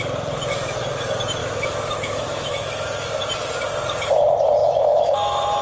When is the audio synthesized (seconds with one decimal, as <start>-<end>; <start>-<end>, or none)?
1.4-3.2; 4.6-5.6

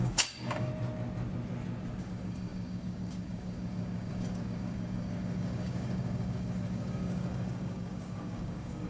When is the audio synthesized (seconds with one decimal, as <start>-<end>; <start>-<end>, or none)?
0.0-0.7; 2.0-8.9

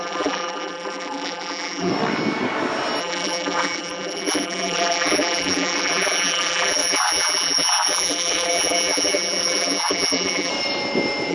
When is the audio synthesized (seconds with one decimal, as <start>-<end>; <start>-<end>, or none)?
0.0-1.9; 3.0-10.5